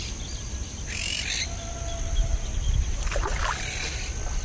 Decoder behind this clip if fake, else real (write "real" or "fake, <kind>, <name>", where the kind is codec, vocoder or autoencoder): real